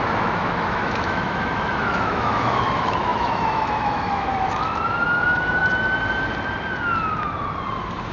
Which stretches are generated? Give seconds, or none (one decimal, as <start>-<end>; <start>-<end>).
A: 0.0-5.6